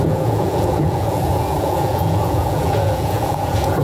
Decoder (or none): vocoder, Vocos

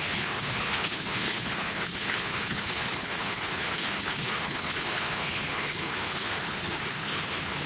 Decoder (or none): codec, HILCodec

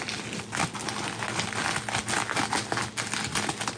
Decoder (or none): none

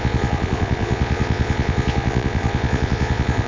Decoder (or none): vocoder, Vocos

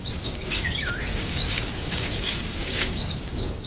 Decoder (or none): codec, DAC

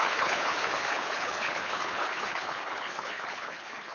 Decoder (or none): codec, HILCodec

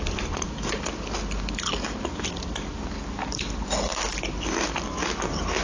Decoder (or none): none